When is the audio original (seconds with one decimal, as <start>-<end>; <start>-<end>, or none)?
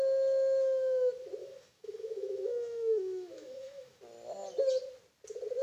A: 0.0-1.4; 4.0-5.6